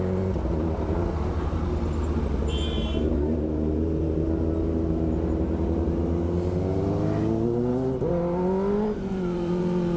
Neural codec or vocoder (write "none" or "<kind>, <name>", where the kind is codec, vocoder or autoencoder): none